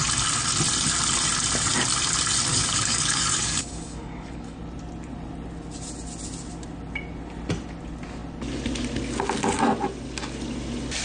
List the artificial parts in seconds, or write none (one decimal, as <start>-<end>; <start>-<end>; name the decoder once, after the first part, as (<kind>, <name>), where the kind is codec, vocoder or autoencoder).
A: 2.5-4.6 (codec, DAC)